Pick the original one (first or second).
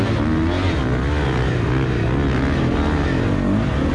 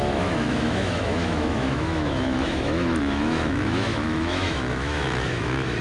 first